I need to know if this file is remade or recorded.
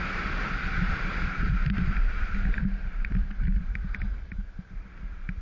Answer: remade